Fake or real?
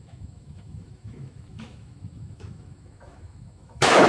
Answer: fake